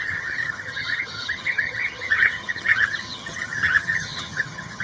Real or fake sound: fake